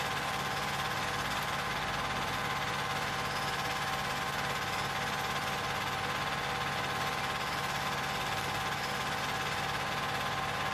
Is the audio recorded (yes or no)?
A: yes